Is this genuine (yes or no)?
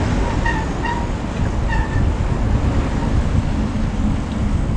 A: yes